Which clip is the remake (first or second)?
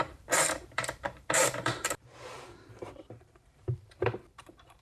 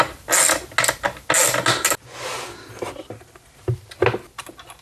first